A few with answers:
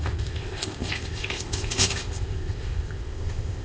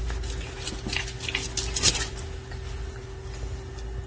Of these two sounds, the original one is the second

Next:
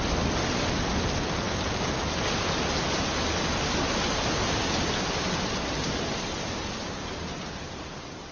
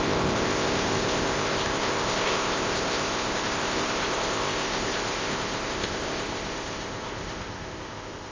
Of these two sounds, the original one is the first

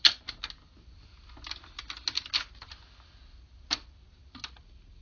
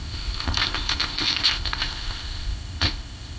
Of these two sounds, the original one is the first